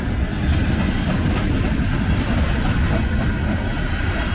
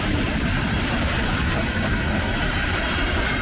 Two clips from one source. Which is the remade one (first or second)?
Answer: second